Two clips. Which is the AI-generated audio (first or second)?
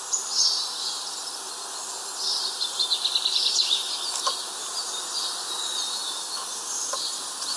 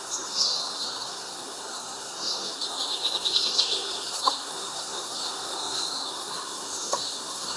second